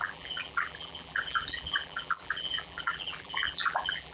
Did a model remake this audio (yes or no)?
yes